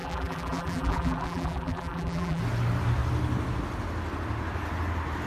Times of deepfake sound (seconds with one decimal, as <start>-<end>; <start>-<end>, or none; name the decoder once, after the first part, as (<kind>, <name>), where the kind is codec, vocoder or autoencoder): 0.0-2.4 (vocoder, BigVGAN v2)